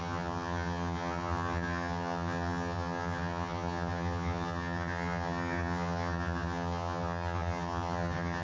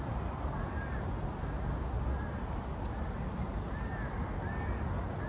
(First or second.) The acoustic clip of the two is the second